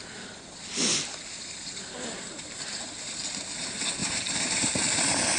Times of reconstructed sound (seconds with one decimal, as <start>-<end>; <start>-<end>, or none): none